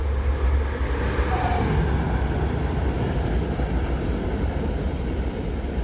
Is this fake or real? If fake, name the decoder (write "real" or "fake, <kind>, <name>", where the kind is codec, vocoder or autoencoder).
real